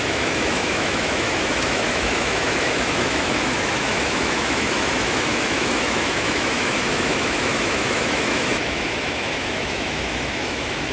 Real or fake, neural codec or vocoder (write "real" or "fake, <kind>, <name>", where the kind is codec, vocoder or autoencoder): fake, autoencoder, DAC-VAE